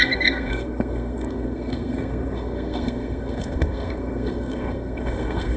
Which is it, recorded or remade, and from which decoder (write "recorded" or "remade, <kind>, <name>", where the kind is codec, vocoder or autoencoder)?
remade, codec, SNAC